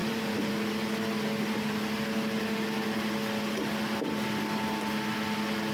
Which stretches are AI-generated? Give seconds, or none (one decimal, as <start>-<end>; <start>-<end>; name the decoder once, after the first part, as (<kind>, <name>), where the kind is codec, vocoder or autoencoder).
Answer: 0.0-0.5 (vocoder, BigVGAN v2)